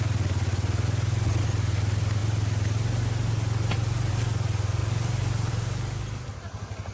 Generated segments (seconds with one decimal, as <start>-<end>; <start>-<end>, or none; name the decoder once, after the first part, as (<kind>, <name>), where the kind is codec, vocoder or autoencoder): none